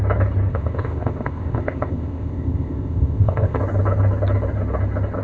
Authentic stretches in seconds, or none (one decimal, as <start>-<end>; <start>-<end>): 0.0-0.5; 3.6-5.2